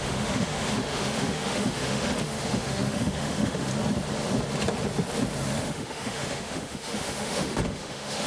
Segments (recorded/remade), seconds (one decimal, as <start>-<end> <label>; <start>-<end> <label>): 0.0-3.7 remade; 3.7-5.6 recorded; 5.6-8.3 remade